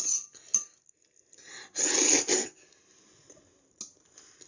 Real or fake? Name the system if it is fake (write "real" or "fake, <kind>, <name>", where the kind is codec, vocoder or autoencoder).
real